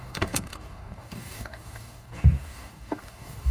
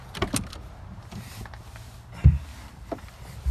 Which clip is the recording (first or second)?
second